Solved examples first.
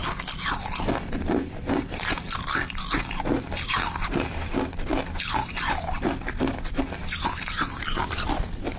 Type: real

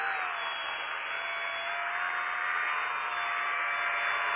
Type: real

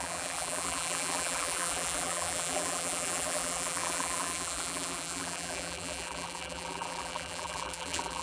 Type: fake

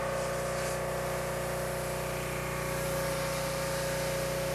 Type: real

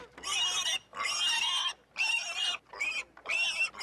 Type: real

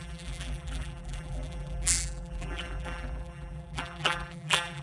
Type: fake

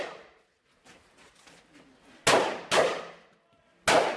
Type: real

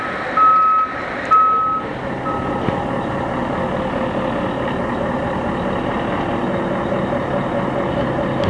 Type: real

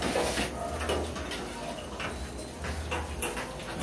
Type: real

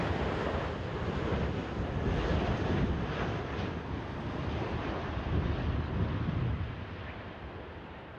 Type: real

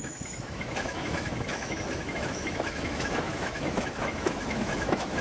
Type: fake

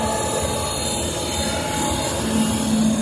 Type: real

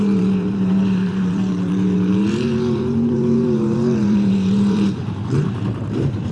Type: fake